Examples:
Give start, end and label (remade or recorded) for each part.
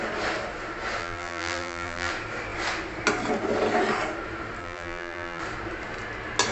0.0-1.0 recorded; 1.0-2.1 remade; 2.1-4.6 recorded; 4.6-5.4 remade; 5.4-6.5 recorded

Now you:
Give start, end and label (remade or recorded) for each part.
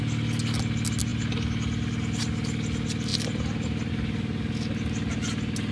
0.0-3.1 recorded; 3.1-3.9 remade; 3.9-5.7 recorded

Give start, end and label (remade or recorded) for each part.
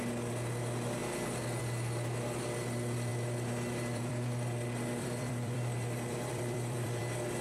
0.0-3.1 recorded; 3.1-7.0 remade; 7.0-7.4 recorded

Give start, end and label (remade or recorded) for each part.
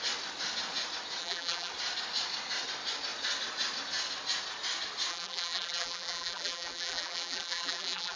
0.0-1.2 recorded; 1.2-1.7 remade; 1.7-5.1 recorded; 5.1-8.2 remade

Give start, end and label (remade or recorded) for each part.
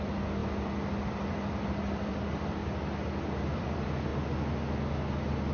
0.0-0.4 remade; 0.4-1.0 recorded; 1.0-2.6 remade; 2.6-3.4 recorded; 3.4-4.1 remade; 4.1-5.5 recorded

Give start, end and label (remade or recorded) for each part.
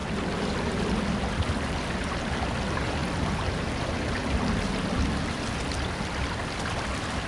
0.0-7.3 recorded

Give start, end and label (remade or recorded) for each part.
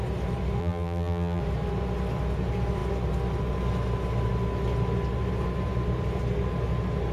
0.0-0.6 recorded; 0.6-1.4 remade; 1.4-7.1 recorded